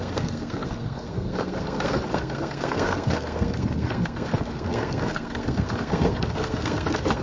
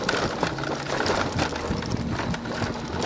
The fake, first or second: first